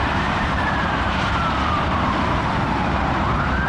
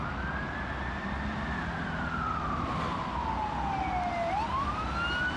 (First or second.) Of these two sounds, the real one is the second